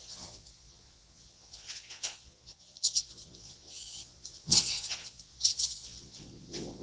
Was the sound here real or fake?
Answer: fake